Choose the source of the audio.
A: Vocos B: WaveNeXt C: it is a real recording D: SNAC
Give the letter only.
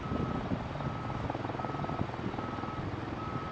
C